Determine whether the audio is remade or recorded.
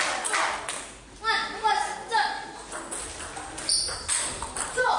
recorded